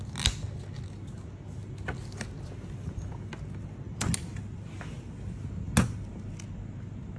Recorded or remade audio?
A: recorded